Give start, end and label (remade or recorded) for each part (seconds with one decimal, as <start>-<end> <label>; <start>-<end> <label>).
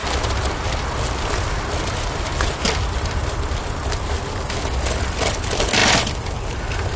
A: 0.0-7.0 recorded